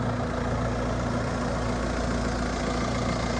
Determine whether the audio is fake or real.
real